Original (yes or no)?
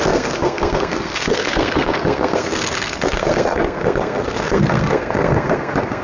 no